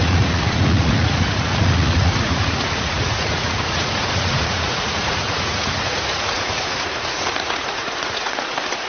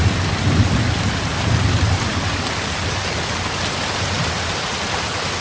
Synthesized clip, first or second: first